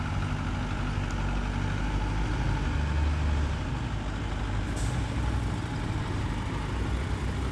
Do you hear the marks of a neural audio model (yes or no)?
no